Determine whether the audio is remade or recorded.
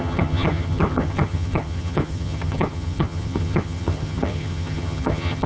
remade